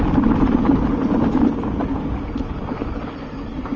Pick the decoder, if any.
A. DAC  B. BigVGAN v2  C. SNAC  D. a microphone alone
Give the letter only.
B